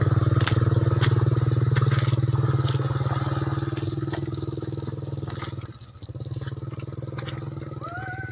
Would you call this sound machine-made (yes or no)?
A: no